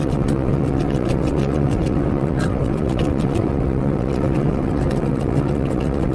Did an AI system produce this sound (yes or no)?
yes